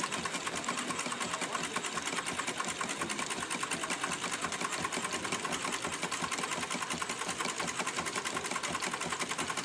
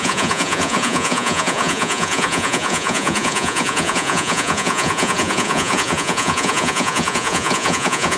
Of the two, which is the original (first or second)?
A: first